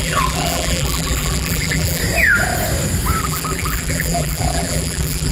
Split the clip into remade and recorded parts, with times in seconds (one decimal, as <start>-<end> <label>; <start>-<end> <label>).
0.0-2.0 remade; 2.0-3.2 recorded; 3.2-5.3 remade